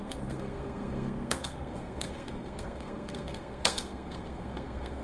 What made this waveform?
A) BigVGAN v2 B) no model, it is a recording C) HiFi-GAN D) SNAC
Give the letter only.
D